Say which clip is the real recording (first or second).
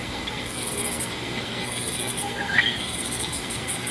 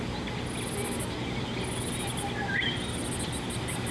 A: second